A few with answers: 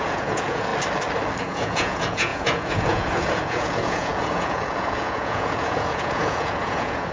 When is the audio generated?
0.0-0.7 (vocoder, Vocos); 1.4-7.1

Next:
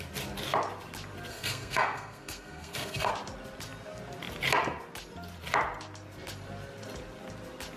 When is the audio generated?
1.3-3.1 (codec, SNAC)

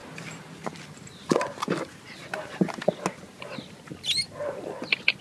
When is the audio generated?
none

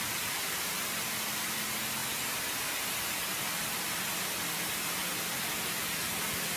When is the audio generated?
0.0-5.0 (vocoder, BigVGAN v2); 5.6-6.6

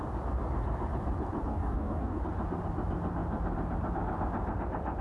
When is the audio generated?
1.5-2.2 (codec, DAC)